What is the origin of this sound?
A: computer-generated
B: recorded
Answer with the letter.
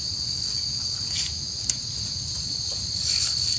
B